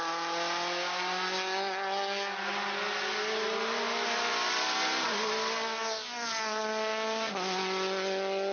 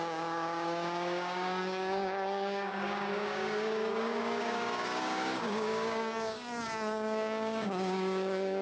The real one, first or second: first